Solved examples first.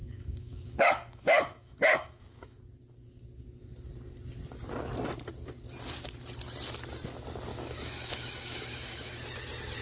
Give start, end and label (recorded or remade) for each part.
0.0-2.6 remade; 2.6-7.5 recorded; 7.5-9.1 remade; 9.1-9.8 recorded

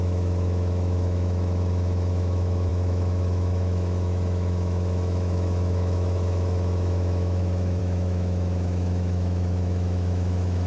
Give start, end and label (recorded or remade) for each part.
0.0-10.7 remade

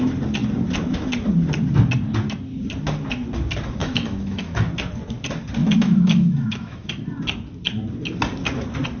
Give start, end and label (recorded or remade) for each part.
0.0-3.8 recorded; 3.8-4.7 remade; 4.7-5.6 recorded; 5.6-6.9 remade; 6.9-9.0 recorded

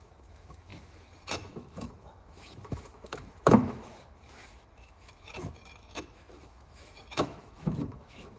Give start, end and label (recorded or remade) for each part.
0.0-8.4 remade

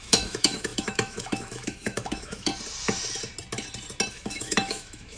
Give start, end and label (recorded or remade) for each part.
0.0-2.5 remade; 2.5-4.1 recorded; 4.1-5.2 remade

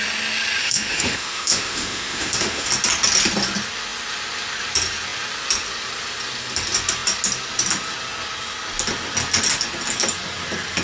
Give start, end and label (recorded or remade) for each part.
0.0-0.6 recorded; 0.6-2.7 remade; 2.7-10.8 recorded

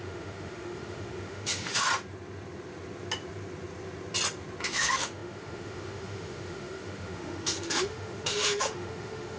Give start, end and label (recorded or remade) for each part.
0.0-1.9 remade; 1.9-4.6 recorded; 4.6-9.4 remade

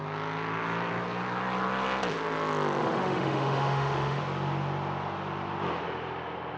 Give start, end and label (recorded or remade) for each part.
0.0-2.8 recorded; 2.8-4.2 remade; 4.2-6.6 recorded